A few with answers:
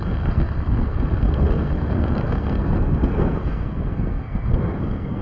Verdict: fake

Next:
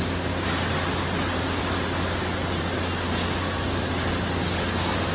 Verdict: real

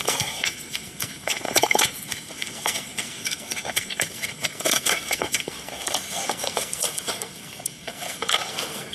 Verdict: fake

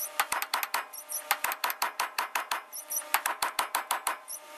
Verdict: real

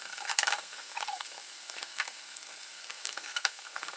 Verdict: fake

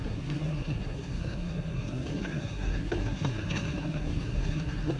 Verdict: fake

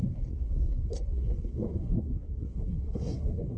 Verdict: fake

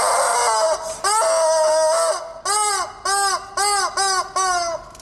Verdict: real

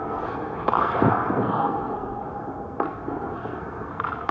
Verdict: fake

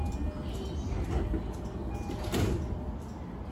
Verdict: real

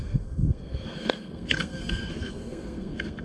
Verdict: fake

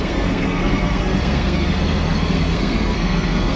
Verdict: fake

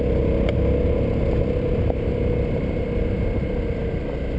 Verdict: real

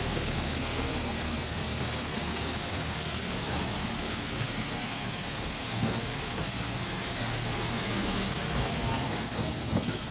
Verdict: fake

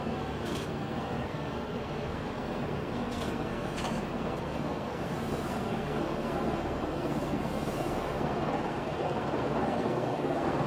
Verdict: fake